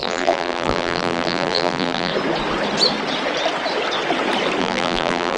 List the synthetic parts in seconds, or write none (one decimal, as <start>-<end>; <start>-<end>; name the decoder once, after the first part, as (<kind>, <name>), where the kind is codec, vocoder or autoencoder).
0.0-2.1 (vocoder, BigVGAN v2); 4.6-5.4